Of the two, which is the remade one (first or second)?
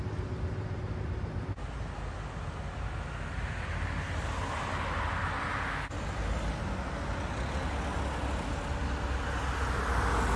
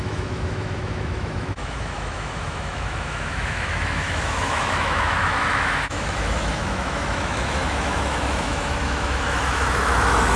second